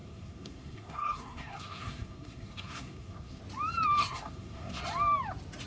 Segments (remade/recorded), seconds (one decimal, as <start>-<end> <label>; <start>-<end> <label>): 0.0-3.4 remade; 3.4-4.0 recorded; 4.0-4.8 remade; 4.8-5.7 recorded

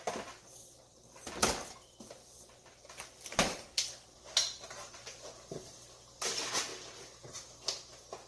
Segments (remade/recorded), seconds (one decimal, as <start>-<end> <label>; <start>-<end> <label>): 0.0-8.3 recorded

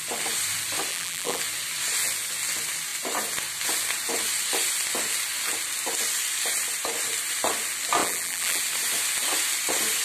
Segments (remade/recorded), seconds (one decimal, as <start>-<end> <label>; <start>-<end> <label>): 0.0-0.9 recorded; 0.9-1.4 remade; 1.4-8.0 recorded; 8.0-8.6 remade; 8.6-10.0 recorded